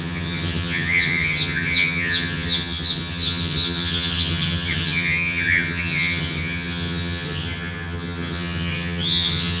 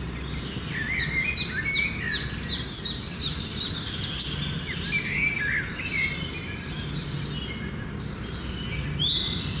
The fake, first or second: first